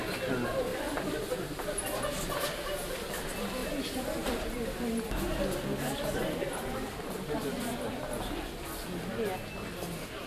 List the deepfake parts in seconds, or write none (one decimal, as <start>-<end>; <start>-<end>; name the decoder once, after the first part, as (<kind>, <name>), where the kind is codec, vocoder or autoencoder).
0.7-1.4 (vocoder, BigVGAN v2); 3.6-4.5